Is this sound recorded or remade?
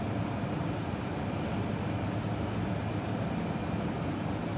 recorded